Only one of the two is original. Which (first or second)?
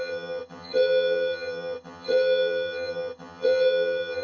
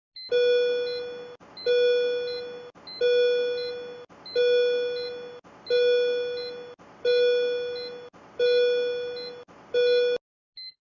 second